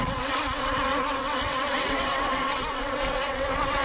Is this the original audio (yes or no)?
no